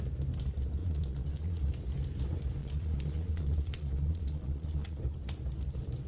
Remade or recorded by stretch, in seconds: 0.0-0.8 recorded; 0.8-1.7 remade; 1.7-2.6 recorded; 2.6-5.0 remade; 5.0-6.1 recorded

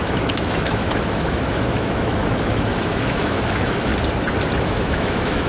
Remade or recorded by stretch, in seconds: 0.0-3.9 remade; 3.9-4.6 recorded; 4.6-5.5 remade

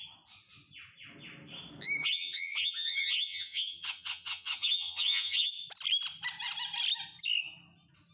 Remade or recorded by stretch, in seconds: 0.0-2.0 recorded; 2.0-5.5 remade; 5.5-8.1 recorded

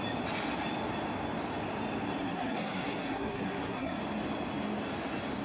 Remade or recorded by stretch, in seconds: 0.0-2.2 recorded; 2.2-4.0 remade; 4.0-5.4 recorded

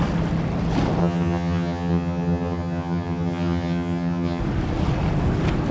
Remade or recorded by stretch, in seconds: 0.0-1.0 recorded; 1.0-4.4 remade; 4.4-5.7 recorded